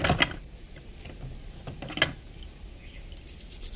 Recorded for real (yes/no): yes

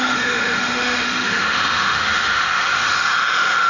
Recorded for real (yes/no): no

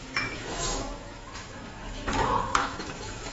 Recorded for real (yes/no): no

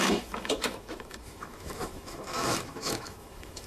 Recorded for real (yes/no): no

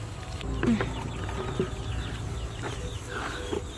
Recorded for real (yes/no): yes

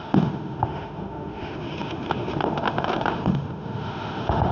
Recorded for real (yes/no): no